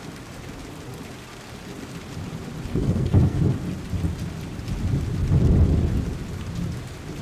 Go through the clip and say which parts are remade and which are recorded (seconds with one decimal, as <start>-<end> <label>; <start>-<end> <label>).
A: 0.0-2.7 recorded; 2.7-3.4 remade; 3.4-7.2 recorded